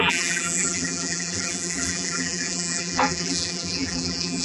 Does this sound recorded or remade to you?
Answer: remade